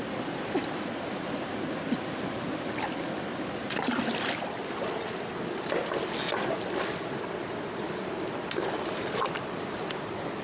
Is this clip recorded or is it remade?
recorded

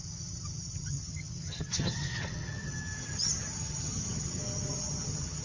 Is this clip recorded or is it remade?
remade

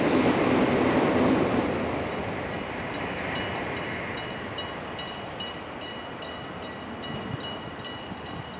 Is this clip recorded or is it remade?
recorded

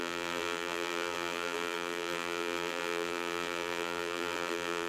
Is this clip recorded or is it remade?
remade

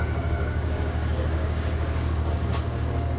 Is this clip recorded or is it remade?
remade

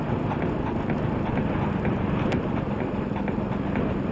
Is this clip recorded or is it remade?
recorded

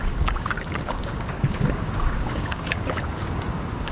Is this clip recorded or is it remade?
remade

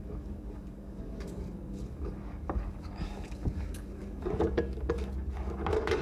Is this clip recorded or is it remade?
remade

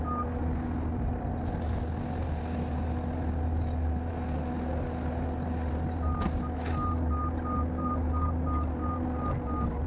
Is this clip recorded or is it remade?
recorded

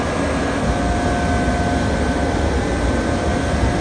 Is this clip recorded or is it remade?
recorded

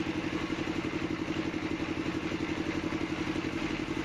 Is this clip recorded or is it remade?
recorded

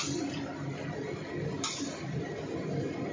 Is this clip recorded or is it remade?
recorded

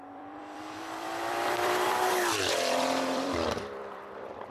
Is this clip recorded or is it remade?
remade